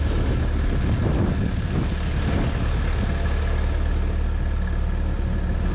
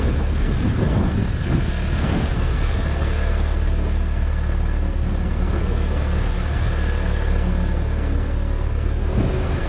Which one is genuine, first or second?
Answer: first